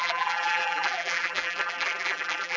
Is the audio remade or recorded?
remade